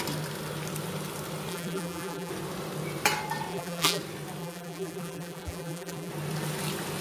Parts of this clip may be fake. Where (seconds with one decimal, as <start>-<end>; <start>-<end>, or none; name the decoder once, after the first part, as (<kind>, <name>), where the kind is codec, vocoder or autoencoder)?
1.5-2.3 (vocoder, BigVGAN v2); 3.5-4.0; 4.4-6.1